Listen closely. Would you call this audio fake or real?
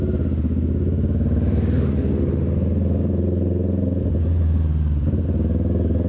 real